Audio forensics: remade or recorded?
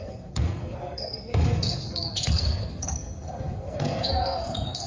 remade